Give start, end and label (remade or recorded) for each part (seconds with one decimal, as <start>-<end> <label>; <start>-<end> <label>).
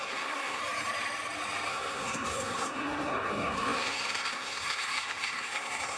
0.0-0.6 remade; 0.6-1.7 recorded; 1.7-6.0 remade